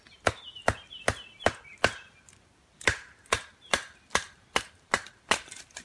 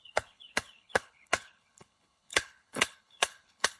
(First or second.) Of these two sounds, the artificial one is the second